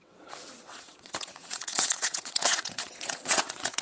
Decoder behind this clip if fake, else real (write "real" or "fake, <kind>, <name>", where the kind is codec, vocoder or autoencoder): fake, vocoder, WaveNeXt